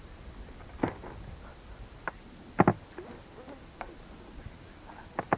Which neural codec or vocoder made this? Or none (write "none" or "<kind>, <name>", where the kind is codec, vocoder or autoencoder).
none